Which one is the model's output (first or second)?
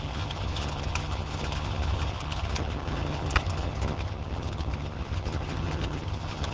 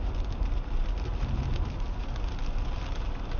first